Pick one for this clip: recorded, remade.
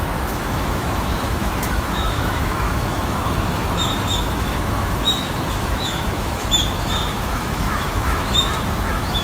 remade